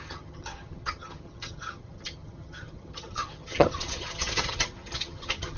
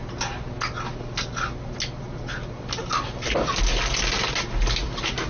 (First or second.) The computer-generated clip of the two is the first